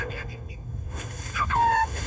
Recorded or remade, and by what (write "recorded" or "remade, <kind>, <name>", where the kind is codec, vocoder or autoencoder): remade, codec, DAC